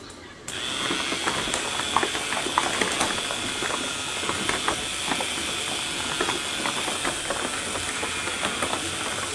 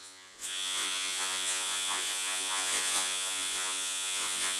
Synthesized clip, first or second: second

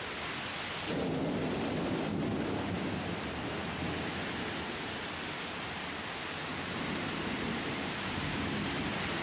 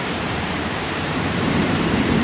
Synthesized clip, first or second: second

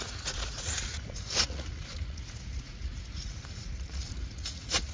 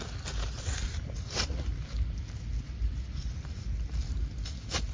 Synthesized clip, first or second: first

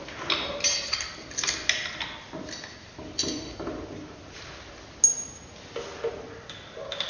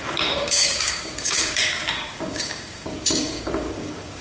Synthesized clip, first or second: second